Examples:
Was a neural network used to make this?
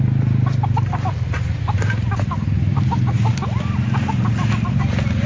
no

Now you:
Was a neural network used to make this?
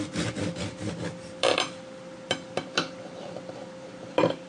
no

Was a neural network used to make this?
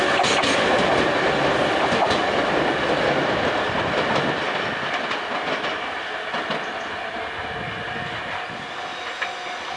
no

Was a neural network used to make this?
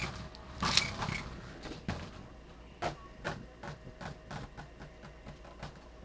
no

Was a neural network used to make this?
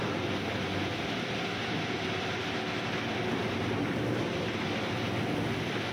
no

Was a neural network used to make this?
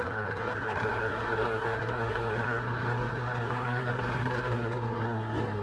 yes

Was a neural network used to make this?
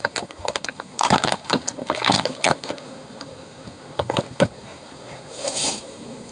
yes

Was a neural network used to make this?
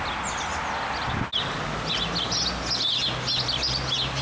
no